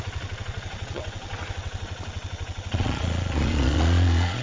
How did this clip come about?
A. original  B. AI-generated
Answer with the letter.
B